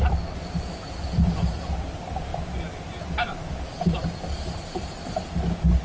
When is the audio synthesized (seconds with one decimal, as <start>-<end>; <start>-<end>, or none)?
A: none